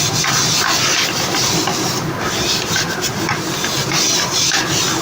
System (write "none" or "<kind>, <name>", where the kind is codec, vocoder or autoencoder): none